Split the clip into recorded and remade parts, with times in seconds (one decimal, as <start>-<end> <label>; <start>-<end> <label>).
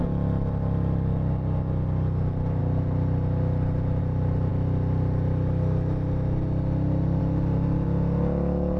0.0-8.8 recorded